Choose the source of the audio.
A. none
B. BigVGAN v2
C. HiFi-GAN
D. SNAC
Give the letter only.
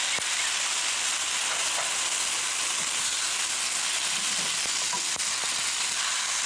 A